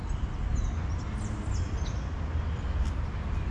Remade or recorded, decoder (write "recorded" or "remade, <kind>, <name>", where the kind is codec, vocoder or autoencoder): recorded